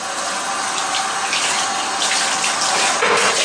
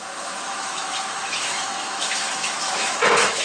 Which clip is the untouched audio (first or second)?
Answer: first